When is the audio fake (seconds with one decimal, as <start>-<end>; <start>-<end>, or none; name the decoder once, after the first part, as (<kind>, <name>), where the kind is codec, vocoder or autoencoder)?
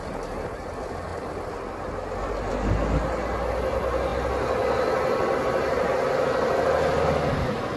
none